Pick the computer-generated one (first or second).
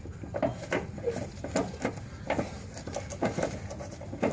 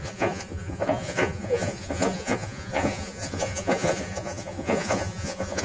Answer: second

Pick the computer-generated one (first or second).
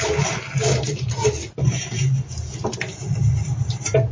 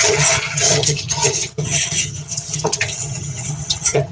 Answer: second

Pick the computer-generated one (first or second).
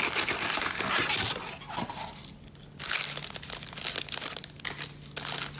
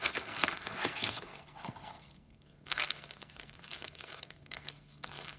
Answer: second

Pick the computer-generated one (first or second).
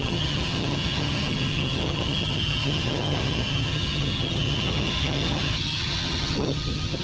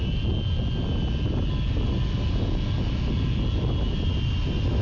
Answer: first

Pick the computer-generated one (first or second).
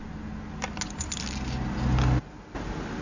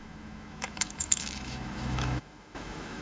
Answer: second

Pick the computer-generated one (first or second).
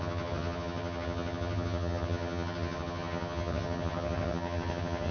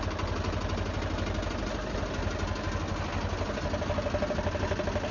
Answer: first